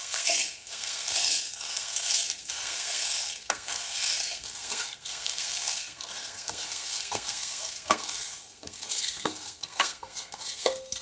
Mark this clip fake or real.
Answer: fake